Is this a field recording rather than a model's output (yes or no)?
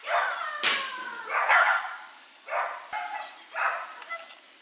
yes